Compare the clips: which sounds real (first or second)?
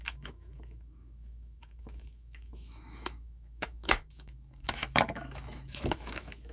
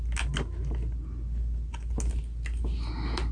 second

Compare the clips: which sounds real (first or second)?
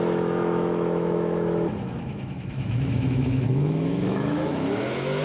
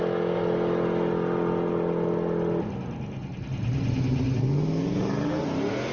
second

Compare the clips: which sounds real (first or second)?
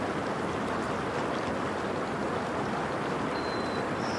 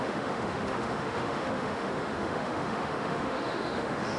first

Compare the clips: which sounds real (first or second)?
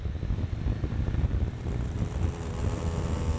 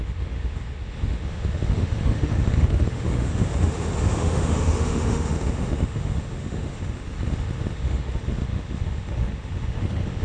first